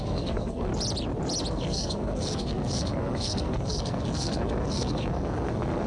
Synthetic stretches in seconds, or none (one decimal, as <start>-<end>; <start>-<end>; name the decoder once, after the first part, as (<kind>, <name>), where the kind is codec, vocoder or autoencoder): 0.0-0.7 (codec, SNAC); 1.5-5.9